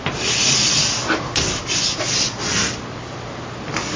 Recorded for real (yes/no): yes